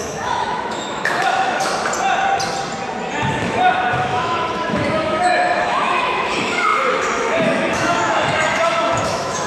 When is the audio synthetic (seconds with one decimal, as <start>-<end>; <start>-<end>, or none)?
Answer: 0.0-1.7; 3.4-9.5